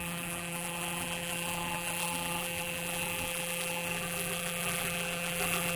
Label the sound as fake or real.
fake